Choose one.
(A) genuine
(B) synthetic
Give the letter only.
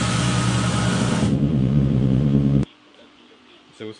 B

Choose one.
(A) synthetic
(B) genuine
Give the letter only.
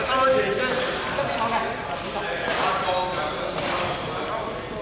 B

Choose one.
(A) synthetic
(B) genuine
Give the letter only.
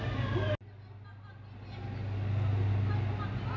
B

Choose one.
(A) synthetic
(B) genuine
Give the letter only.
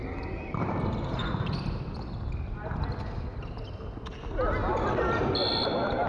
B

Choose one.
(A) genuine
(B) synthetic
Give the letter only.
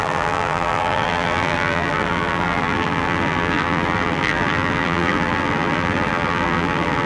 B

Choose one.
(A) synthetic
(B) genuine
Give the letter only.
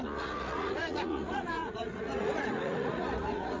A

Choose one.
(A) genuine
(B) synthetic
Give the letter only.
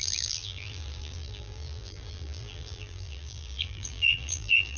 B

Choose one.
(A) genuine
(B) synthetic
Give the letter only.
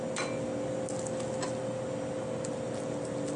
A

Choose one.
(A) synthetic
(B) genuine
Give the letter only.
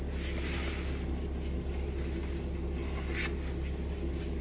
B